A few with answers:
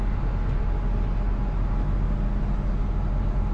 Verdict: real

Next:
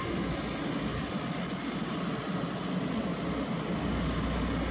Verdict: real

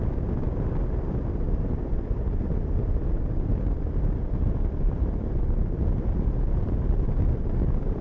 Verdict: real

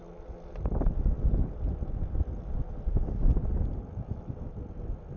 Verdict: real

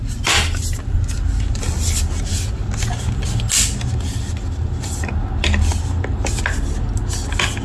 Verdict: real